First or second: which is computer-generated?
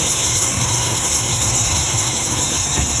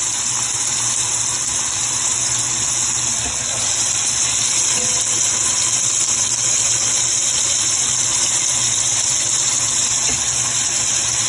first